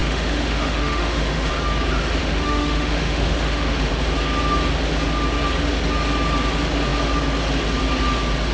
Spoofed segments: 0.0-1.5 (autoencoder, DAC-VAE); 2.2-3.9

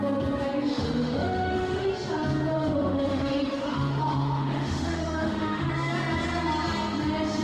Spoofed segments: 0.7-1.9 (autoencoder, DAC-VAE); 2.5-5.7

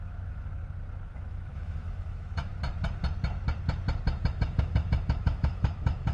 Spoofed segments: 0.0-0.6 (autoencoder, DAC-VAE); 1.1-2.5; 4.3-6.1

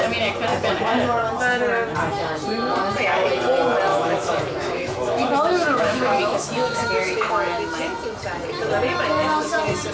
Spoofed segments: 3.9-7.3 (autoencoder, DAC-VAE)

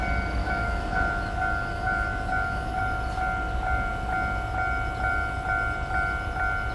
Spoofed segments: 0.4-2.8 (autoencoder, DAC-VAE)

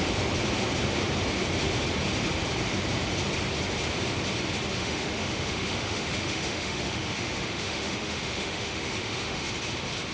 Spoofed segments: 4.7-9.5 (autoencoder, DAC-VAE)